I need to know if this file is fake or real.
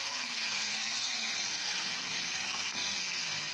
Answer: fake